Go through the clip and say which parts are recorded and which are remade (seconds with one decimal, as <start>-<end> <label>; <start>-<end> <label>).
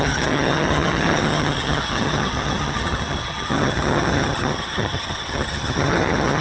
0.0-6.4 remade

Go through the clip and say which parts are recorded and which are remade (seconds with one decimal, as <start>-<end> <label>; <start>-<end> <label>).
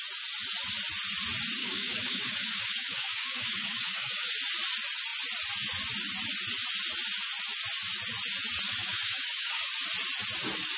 0.0-1.6 recorded; 1.6-4.3 remade; 4.3-8.8 recorded; 8.8-9.7 remade; 9.7-10.8 recorded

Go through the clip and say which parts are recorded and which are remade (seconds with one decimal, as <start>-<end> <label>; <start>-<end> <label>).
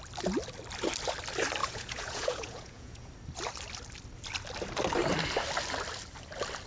0.0-1.6 recorded; 1.6-3.1 remade; 3.1-6.7 recorded